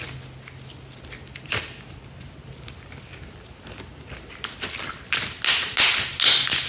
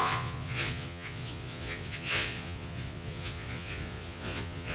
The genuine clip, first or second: first